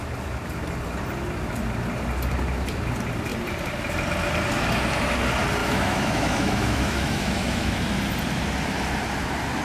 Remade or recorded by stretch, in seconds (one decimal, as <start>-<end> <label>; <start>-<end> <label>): 0.0-5.6 recorded; 5.6-7.7 remade; 7.7-9.6 recorded